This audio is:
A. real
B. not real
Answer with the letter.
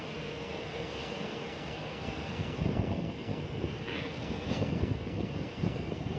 B